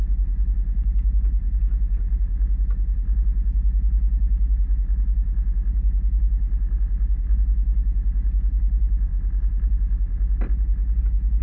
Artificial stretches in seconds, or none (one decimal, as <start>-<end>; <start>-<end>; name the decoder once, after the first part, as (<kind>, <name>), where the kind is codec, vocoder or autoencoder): none